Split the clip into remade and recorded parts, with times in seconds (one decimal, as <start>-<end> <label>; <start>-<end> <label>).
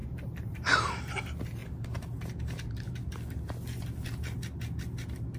0.0-0.9 remade; 0.9-1.6 recorded; 1.6-3.1 remade; 3.1-5.4 recorded